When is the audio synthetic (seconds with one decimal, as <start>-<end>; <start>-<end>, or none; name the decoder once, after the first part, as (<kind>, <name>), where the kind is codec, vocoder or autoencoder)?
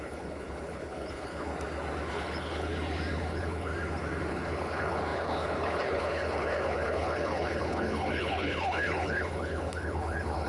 0.0-1.5 (codec, HILCodec); 2.1-2.7; 3.3-3.7; 4.3-10.5